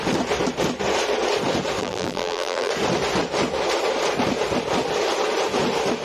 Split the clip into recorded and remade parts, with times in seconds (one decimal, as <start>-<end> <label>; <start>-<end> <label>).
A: 0.0-1.8 recorded; 1.8-2.7 remade; 2.7-6.0 recorded